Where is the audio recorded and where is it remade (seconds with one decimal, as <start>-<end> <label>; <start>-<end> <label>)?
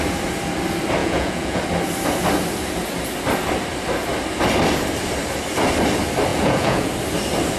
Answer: 0.0-1.0 recorded; 1.0-1.6 remade; 1.6-6.3 recorded; 6.3-6.9 remade; 6.9-7.6 recorded